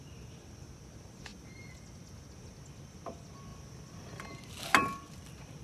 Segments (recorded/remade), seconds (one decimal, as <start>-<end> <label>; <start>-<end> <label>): 0.0-5.6 recorded